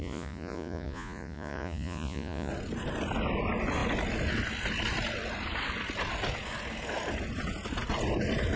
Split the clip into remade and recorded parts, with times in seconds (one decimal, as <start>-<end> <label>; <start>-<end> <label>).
0.0-2.5 remade; 2.5-8.6 recorded